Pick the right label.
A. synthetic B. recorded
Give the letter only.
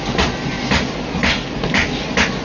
B